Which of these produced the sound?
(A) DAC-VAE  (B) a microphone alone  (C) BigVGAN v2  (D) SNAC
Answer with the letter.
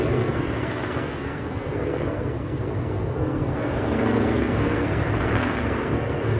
D